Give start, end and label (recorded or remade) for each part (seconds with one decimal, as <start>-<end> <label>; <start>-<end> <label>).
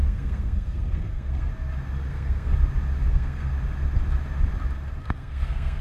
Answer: 0.0-1.5 remade; 1.5-2.1 recorded; 2.1-2.5 remade; 2.5-3.1 recorded; 3.1-3.5 remade; 3.5-5.0 recorded; 5.0-5.8 remade